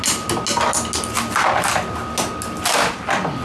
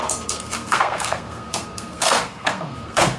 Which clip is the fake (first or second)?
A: second